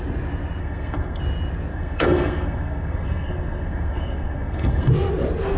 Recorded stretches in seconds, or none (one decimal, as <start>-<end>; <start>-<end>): 0.0-0.6; 1.2-1.7; 4.9-5.6